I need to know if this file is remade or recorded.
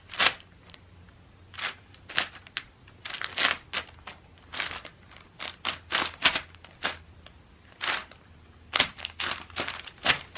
recorded